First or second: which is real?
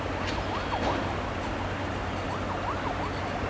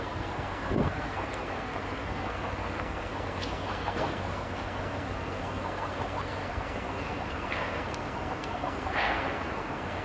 first